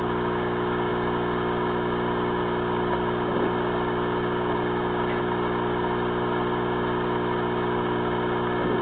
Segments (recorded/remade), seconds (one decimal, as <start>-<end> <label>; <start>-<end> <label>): 0.0-8.8 recorded